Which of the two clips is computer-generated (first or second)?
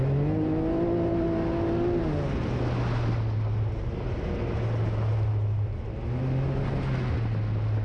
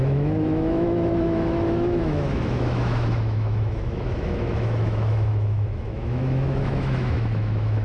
second